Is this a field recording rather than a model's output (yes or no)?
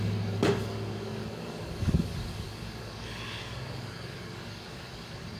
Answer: no